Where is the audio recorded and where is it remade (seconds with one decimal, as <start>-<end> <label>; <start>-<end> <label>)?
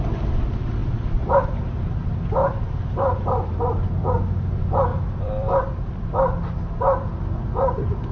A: 0.0-0.8 recorded; 0.8-1.6 remade; 1.6-2.4 recorded; 2.4-3.9 remade; 3.9-4.9 recorded; 4.9-6.1 remade; 6.1-8.1 recorded